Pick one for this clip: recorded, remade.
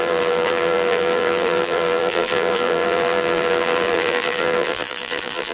remade